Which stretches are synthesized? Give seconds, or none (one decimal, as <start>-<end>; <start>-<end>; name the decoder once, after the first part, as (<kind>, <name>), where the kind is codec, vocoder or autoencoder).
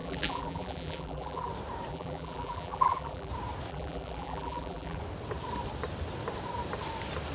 0.0-1.5 (vocoder, BigVGAN v2); 1.9-3.3; 3.7-5.0